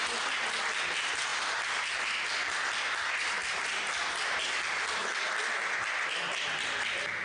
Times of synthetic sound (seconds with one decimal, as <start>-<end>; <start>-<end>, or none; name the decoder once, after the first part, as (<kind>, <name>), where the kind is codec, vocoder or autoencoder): none